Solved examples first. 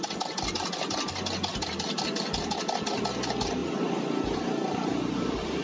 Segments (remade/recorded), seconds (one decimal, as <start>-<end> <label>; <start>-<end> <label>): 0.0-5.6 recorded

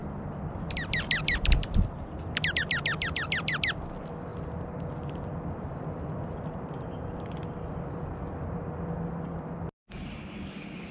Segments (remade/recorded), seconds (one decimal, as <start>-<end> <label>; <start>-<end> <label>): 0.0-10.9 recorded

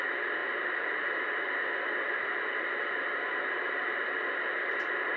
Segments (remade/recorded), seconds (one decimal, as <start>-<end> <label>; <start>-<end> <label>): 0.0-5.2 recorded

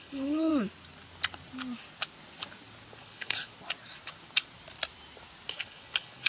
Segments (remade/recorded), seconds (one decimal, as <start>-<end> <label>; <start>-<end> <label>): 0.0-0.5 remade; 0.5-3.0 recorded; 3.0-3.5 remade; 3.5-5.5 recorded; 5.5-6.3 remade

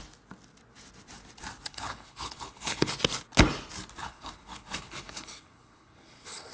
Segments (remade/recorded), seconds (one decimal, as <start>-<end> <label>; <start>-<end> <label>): 0.0-1.7 recorded; 1.7-2.9 remade; 2.9-4.0 recorded; 4.0-6.5 remade

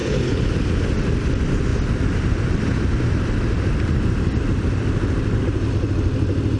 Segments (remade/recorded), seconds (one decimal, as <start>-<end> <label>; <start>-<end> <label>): 0.0-0.5 remade; 0.5-6.6 recorded

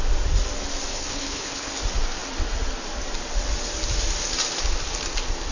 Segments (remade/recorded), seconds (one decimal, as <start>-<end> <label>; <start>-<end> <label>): 0.0-0.9 recorded; 0.9-1.7 remade; 1.7-5.5 recorded

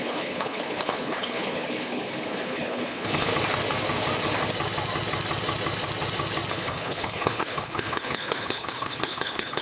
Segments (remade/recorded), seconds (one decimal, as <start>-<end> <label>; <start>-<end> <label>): 0.0-3.3 remade; 3.3-6.5 recorded; 6.5-9.6 remade